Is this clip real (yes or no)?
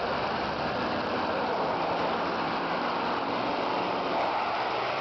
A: no